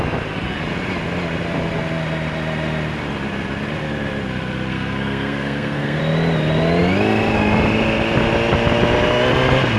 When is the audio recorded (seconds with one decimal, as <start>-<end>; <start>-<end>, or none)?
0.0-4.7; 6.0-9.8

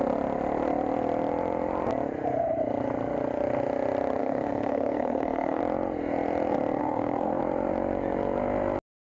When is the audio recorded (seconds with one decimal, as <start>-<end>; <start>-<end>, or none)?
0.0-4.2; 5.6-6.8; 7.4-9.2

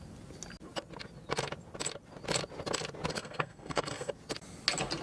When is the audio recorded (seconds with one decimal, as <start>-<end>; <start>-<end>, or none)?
0.0-3.1; 4.1-5.0